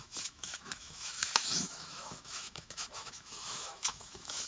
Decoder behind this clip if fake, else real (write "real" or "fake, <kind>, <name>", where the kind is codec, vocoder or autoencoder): fake, autoencoder, DAC-VAE